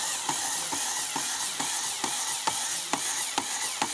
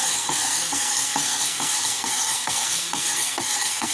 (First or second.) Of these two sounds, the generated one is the second